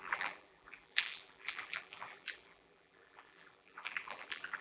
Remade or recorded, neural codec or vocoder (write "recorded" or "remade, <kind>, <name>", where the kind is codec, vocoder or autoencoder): remade, vocoder, BigVGAN v2